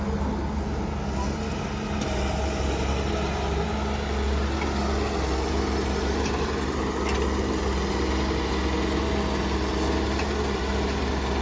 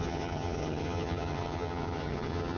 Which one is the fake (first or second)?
second